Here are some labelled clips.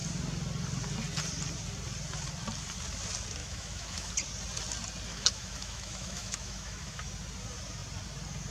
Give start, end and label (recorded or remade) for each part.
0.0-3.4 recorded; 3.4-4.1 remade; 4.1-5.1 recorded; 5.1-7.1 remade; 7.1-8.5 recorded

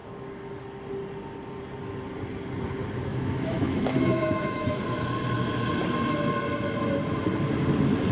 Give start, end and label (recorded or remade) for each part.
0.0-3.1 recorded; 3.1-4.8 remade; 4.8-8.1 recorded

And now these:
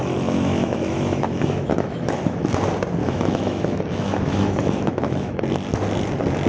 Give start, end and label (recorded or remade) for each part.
0.0-2.5 remade; 2.5-3.0 recorded; 3.0-5.4 remade; 5.4-6.5 recorded